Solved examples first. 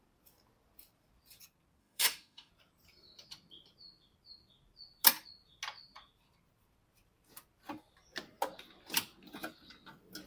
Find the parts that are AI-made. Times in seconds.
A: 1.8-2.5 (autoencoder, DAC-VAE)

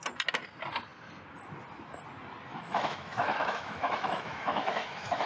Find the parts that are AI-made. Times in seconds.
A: 2.5-5.3 (autoencoder, DAC-VAE)

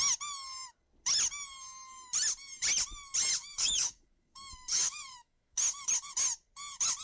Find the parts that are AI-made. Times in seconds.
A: 3.4-5.9 (autoencoder, DAC-VAE)

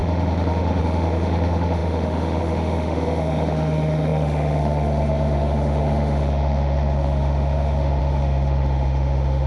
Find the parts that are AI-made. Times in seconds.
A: 0.0-9.5 (autoencoder, DAC-VAE)